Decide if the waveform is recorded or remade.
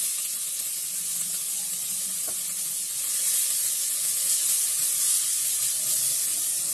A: remade